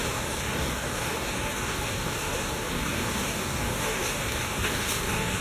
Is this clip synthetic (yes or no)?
yes